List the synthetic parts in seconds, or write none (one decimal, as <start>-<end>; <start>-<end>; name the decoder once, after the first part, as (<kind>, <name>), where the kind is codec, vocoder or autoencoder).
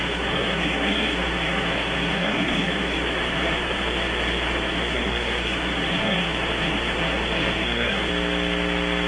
0.0-8.1 (codec, SNAC)